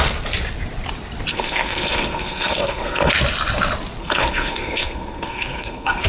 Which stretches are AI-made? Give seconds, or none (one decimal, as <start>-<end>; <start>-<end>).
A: 1.3-3.1; 4.0-6.1